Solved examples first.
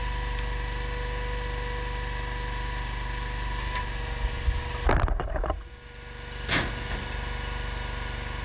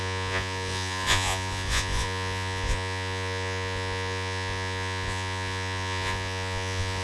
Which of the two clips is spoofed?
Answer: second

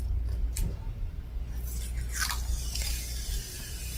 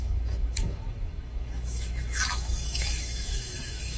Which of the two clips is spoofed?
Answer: second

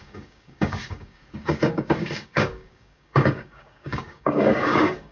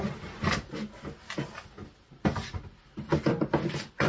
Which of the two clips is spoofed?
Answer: first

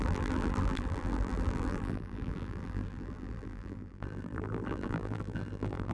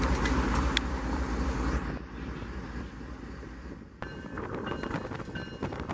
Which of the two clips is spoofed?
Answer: first